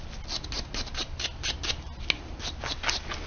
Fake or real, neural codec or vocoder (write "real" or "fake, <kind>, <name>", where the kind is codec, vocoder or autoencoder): real